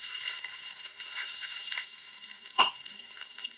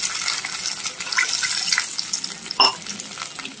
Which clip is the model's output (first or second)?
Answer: first